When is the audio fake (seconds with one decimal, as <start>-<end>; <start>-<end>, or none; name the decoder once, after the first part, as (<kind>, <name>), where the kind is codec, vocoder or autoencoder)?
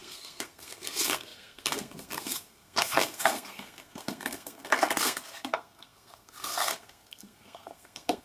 0.0-8.2 (codec, SNAC)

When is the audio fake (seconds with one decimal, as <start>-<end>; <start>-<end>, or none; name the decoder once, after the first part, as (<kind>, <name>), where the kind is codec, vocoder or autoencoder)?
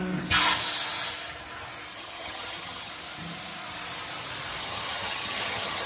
1.9-2.9 (vocoder, HiFi-GAN); 4.6-5.9